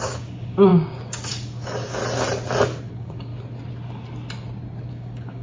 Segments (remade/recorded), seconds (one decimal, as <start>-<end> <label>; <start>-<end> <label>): 0.0-2.0 remade; 2.0-2.9 recorded; 2.9-3.3 remade; 3.3-4.9 recorded; 4.9-5.4 remade